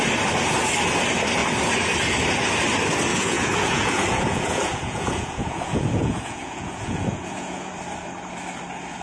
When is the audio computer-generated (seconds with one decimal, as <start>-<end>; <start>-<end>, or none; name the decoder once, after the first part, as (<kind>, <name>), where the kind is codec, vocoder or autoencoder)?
3.1-7.7 (vocoder, Vocos)